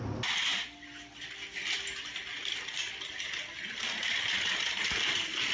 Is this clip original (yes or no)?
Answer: yes